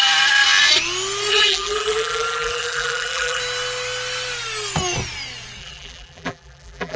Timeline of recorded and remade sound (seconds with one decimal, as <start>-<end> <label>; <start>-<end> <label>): 0.0-1.3 recorded; 1.3-3.4 remade; 3.4-5.6 recorded; 5.6-7.0 remade